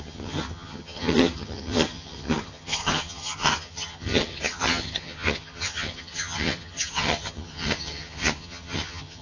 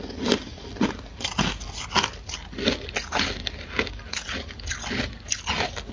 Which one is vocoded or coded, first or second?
first